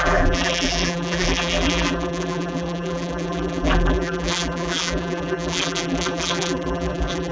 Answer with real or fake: fake